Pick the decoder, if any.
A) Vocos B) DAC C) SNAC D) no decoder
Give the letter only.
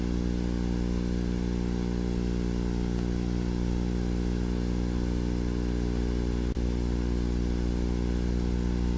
D